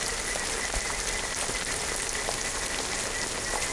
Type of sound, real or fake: real